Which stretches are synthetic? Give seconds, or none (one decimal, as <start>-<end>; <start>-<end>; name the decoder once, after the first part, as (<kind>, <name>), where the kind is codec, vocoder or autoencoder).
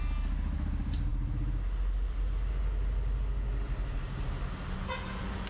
none